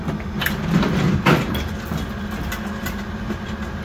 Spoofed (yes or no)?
no